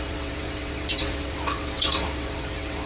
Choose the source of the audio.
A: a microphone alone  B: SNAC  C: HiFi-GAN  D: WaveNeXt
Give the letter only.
D